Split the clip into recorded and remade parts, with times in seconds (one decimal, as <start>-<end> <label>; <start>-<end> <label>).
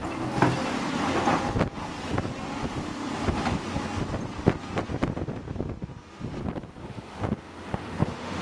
0.0-6.8 recorded; 6.8-8.4 remade